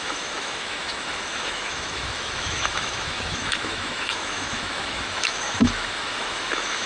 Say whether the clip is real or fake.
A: fake